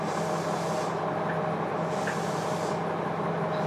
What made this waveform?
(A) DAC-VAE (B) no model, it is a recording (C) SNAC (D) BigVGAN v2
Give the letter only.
B